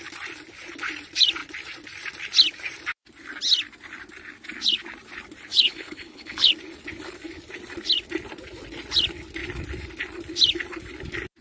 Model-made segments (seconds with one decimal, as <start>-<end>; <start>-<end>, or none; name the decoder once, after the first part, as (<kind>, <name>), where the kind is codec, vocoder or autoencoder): 5.5-6.5 (codec, HILCodec)